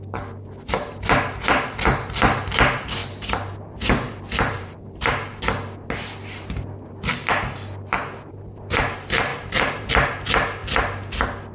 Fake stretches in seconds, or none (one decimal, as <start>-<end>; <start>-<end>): 3.0-5.4; 8.3-8.8; 9.3-9.9